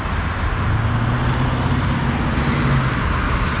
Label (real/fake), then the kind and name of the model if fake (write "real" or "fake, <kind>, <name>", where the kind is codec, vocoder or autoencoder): real